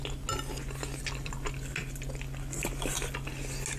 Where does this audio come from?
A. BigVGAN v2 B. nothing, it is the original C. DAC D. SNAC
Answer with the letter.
B